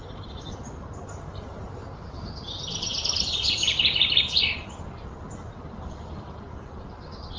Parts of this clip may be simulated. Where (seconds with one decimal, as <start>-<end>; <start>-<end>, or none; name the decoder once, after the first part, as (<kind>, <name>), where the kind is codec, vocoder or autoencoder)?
none